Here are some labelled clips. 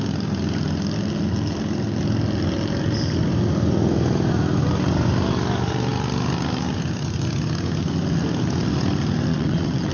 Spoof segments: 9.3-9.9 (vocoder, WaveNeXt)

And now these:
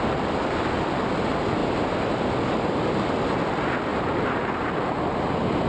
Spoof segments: 3.9-5.3 (vocoder, BigVGAN v2)

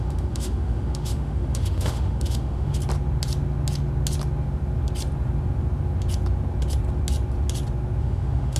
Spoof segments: 0.0-2.8 (autoencoder, DAC-VAE); 8.0-8.6